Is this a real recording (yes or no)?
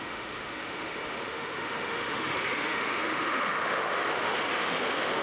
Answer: no